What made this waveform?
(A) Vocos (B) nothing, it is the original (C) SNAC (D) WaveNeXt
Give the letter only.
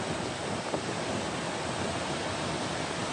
B